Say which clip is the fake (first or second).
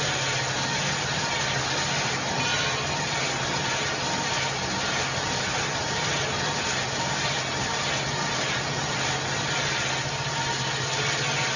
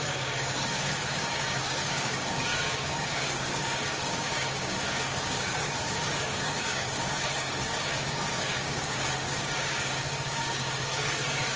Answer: second